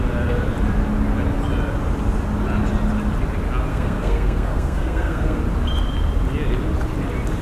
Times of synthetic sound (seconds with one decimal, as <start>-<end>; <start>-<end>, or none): 3.7-5.4